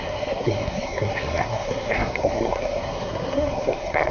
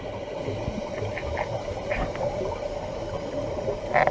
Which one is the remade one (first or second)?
first